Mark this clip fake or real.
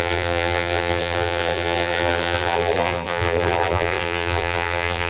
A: fake